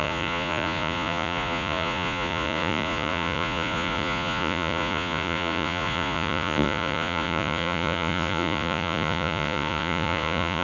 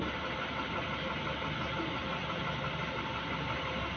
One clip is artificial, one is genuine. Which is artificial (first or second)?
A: first